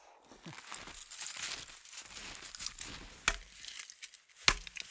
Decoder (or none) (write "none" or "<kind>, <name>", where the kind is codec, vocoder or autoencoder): none